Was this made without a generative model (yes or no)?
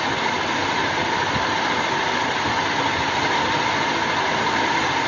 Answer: yes